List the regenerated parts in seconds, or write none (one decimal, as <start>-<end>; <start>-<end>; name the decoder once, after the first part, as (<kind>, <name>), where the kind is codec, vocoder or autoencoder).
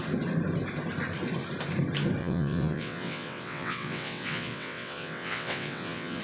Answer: 2.2-6.2 (vocoder, WaveNeXt)